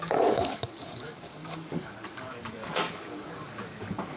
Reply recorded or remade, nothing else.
remade